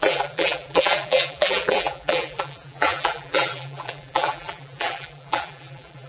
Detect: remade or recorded remade